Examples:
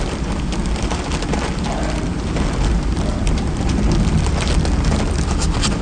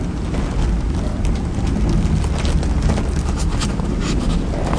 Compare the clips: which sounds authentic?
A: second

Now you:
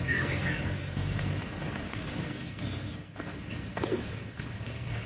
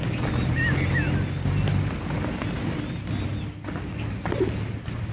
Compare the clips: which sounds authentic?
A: second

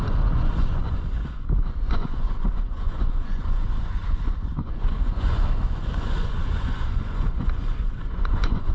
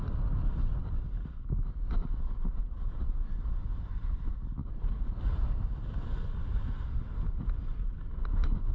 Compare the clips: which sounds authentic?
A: second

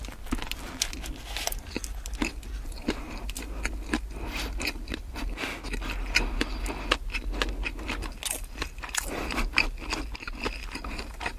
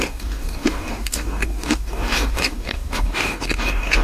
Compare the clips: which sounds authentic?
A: first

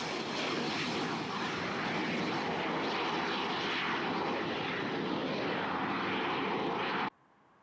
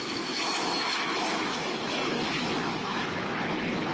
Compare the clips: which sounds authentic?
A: first